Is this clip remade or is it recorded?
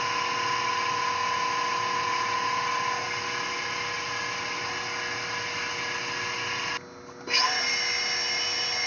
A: recorded